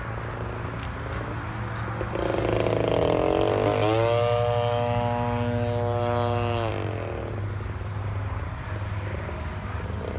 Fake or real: real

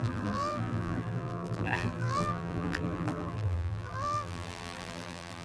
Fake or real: fake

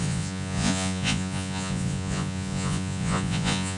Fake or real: fake